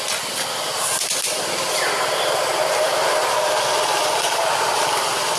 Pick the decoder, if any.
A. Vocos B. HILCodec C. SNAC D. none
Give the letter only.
D